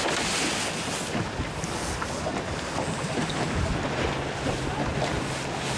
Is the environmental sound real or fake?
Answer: real